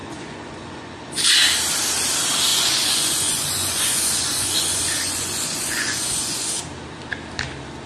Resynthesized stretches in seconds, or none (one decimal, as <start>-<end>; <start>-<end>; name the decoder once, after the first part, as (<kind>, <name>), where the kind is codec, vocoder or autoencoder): 0.0-1.0 (vocoder, Vocos); 2.5-6.5

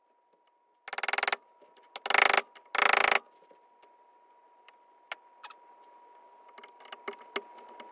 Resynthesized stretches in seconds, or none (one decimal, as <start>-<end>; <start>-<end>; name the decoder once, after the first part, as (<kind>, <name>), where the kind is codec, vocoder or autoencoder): none

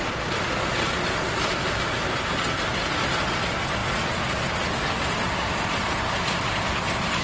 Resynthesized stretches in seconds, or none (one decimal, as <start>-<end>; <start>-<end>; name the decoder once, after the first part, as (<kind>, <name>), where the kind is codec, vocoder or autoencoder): none

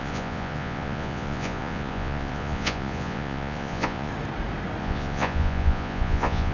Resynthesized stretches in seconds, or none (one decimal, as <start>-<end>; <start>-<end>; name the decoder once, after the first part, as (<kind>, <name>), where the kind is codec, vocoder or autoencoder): 0.0-4.1 (vocoder, Vocos); 4.8-6.5

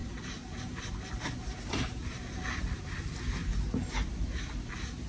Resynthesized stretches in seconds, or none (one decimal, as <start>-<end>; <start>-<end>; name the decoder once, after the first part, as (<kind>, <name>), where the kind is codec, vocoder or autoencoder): none

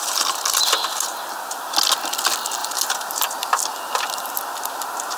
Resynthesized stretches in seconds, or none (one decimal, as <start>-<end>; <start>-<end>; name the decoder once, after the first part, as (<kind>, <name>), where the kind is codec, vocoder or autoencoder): 2.6-3.6 (vocoder, BigVGAN v2)

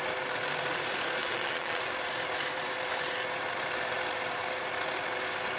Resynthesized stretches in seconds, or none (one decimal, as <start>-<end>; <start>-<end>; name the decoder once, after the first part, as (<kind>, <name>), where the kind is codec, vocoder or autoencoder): 1.2-1.8 (vocoder, Vocos)